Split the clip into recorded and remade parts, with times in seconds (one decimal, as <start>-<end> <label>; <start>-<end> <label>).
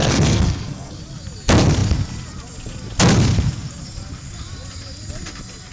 0.0-1.0 remade; 1.0-5.7 recorded